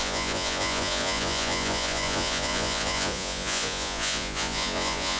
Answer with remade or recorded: remade